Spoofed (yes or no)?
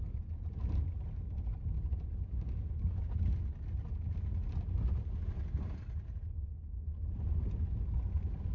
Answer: no